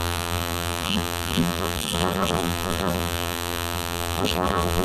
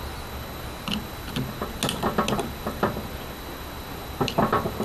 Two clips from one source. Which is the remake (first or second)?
first